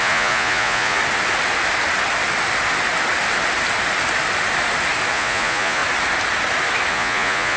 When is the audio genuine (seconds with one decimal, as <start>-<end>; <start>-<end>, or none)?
1.0-5.1; 5.8-6.9